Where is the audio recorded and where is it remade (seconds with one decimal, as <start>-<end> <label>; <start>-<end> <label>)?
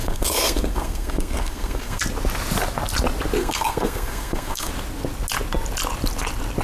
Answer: 0.0-2.0 remade; 2.0-3.4 recorded; 3.4-4.7 remade; 4.7-6.6 recorded